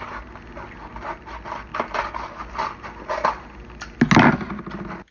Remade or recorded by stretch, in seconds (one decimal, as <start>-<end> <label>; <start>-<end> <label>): 0.0-5.1 recorded

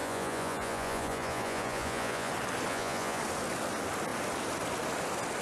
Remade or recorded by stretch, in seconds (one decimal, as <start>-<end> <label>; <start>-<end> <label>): 0.0-2.3 remade; 2.3-2.7 recorded; 2.7-3.2 remade; 3.2-5.4 recorded

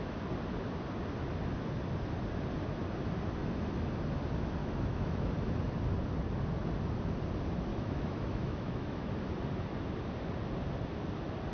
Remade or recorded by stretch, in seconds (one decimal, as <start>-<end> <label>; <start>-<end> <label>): 0.0-4.6 recorded; 4.6-5.3 remade; 5.3-7.7 recorded; 7.7-9.1 remade; 9.1-11.5 recorded

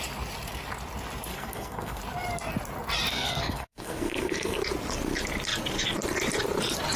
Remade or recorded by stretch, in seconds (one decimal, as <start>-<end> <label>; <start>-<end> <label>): 0.0-1.3 recorded; 1.3-2.0 remade; 2.0-3.1 recorded; 3.1-4.6 remade; 4.6-7.0 recorded

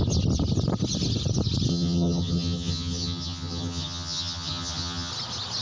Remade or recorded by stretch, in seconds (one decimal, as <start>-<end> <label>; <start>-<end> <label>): 0.0-1.7 recorded; 1.7-5.1 remade; 5.1-5.6 recorded

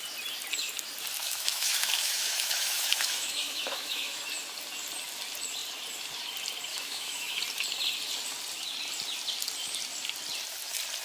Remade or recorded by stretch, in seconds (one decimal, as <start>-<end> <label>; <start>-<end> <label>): 0.0-1.2 recorded; 1.2-4.2 remade; 4.2-6.7 recorded; 6.7-7.4 remade; 7.4-11.0 recorded

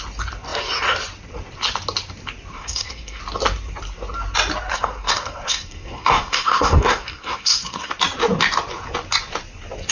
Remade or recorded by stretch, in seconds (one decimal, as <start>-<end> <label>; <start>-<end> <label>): 0.0-2.5 recorded; 2.5-3.2 remade; 3.2-4.7 recorded; 4.7-7.9 remade; 7.9-9.9 recorded